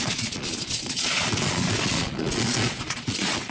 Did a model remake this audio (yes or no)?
yes